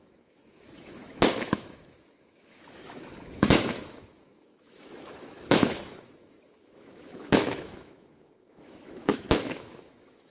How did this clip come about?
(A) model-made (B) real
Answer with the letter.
A